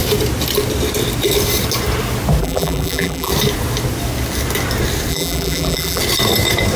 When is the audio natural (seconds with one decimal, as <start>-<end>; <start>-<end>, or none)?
0.0-2.4; 3.3-5.1; 6.0-6.8